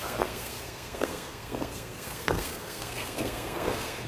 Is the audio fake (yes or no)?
yes